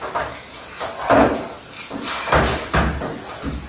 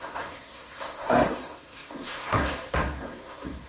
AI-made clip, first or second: second